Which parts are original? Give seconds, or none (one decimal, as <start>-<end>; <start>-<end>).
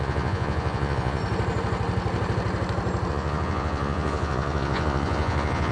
1.2-3.1